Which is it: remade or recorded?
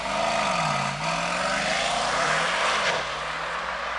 recorded